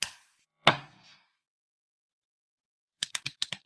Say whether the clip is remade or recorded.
remade